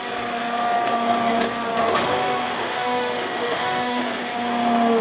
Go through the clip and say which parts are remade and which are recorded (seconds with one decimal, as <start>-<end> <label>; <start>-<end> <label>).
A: 0.0-1.8 recorded; 1.8-4.0 remade; 4.0-5.0 recorded